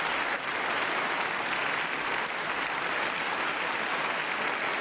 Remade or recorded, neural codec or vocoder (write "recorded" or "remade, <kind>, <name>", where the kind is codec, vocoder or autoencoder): recorded